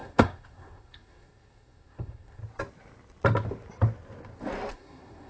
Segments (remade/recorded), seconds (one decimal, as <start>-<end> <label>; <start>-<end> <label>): 0.0-2.4 remade; 2.4-4.7 recorded; 4.7-5.3 remade